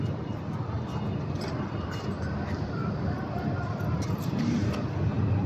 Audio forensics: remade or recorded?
recorded